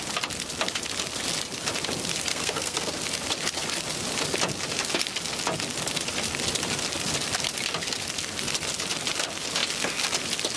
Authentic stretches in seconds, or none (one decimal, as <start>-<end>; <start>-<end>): 0.0-2.3; 2.9-10.6